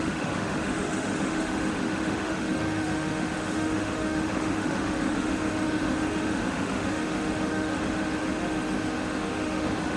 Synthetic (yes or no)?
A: yes